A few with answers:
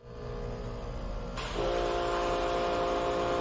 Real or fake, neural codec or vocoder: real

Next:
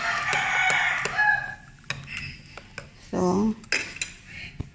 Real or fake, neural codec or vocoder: real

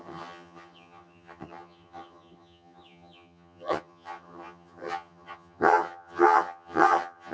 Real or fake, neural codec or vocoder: fake, vocoder, HiFi-GAN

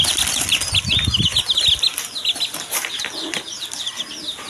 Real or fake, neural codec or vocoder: real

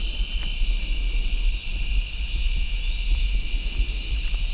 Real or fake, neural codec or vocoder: real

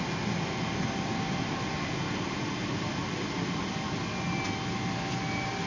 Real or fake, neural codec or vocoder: real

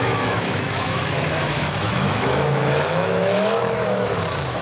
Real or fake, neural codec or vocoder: fake, autoencoder, DAC-VAE